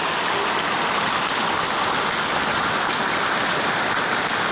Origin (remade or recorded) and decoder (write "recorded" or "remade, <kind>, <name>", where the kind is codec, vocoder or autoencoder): recorded